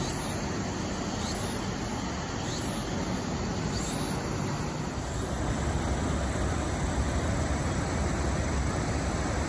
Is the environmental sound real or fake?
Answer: real